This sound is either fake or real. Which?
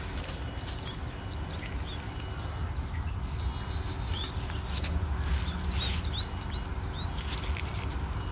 real